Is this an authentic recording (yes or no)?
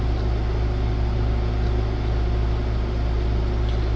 yes